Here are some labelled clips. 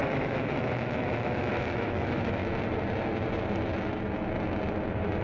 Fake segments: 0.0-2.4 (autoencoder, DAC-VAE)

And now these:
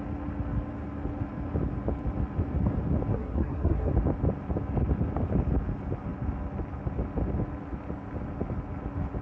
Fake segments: 3.1-3.9 (codec, SNAC)